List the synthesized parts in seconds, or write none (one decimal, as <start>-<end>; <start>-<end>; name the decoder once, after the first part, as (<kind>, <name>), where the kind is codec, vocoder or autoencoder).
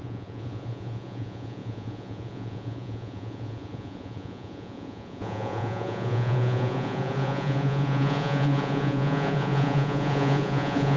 0.0-11.0 (vocoder, Vocos)